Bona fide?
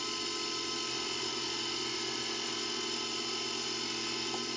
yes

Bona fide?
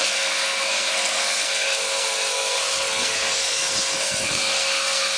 no